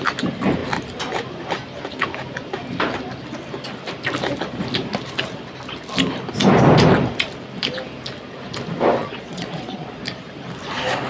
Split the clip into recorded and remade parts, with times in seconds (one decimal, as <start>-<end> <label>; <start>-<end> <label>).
0.0-9.0 recorded; 9.0-10.0 remade; 10.0-11.1 recorded